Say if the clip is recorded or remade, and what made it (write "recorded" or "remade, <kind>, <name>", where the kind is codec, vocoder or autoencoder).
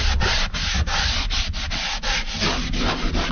recorded